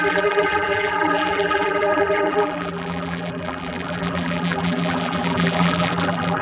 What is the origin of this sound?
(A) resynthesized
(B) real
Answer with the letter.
A